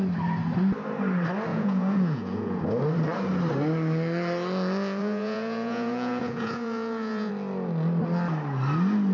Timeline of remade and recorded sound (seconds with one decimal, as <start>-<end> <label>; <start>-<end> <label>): 0.0-1.5 recorded; 1.5-2.6 remade; 2.6-5.0 recorded; 5.0-7.3 remade; 7.3-9.1 recorded

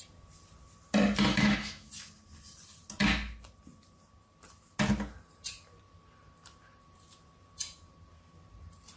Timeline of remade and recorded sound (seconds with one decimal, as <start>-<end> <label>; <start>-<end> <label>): 0.0-1.3 recorded; 1.3-1.9 remade; 1.9-9.0 recorded

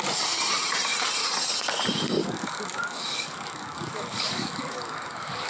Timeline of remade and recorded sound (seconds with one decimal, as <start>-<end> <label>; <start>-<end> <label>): 0.0-2.2 recorded; 2.2-5.5 remade

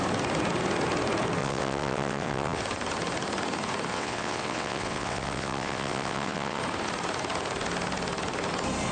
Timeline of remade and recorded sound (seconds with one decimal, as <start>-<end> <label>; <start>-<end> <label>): 0.0-1.4 recorded; 1.4-2.6 remade; 2.6-3.9 recorded; 3.9-6.6 remade; 6.6-8.9 recorded